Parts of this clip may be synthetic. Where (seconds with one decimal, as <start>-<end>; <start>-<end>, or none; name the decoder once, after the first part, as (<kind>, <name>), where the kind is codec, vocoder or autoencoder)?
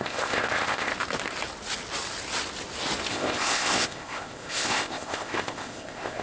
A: 0.0-0.9 (codec, ZipCodec); 3.1-6.2